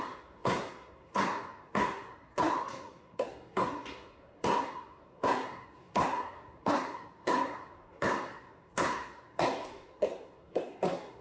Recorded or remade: remade